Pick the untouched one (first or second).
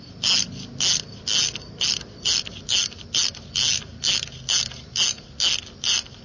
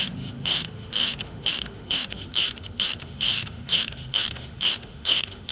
first